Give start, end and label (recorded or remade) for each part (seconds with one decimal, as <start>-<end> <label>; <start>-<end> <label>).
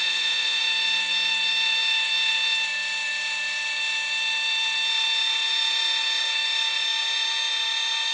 0.0-0.6 remade; 0.6-8.1 recorded